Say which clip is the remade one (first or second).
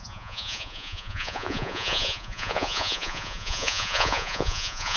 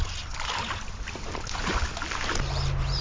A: first